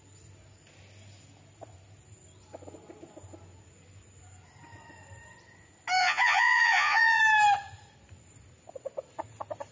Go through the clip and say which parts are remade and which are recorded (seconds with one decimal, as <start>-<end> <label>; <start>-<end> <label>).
0.0-6.0 recorded; 6.0-7.2 remade; 7.2-9.7 recorded